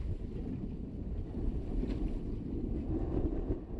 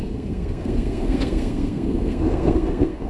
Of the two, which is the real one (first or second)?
first